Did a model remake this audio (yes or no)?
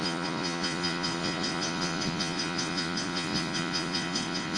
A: yes